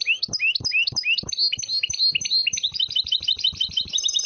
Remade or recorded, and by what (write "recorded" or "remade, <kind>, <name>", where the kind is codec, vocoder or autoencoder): recorded